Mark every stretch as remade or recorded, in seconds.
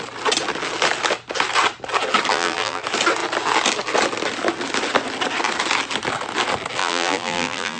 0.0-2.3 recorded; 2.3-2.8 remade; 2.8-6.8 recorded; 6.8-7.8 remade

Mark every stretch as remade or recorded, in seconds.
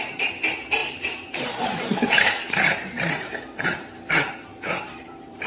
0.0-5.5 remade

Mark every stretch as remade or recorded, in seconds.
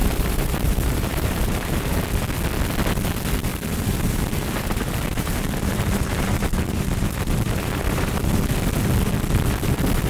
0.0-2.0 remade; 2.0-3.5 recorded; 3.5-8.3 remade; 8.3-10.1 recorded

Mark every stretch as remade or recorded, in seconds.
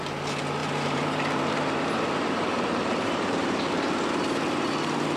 0.0-0.6 recorded; 0.6-3.7 remade; 3.7-5.2 recorded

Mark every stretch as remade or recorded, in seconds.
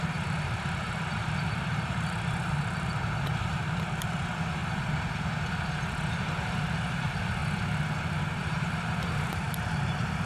0.0-4.6 remade; 4.6-6.1 recorded; 6.1-7.4 remade; 7.4-8.4 recorded; 8.4-10.3 remade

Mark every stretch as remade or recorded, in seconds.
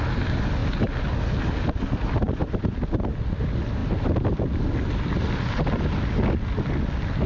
0.0-7.3 recorded